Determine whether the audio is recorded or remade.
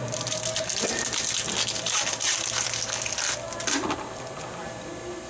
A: recorded